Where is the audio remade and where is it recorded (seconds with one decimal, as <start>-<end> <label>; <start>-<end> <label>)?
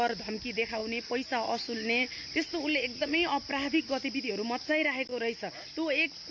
0.0-6.3 recorded